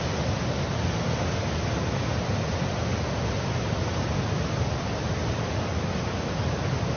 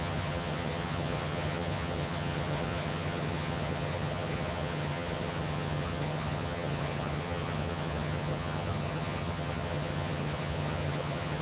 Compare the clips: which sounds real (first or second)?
first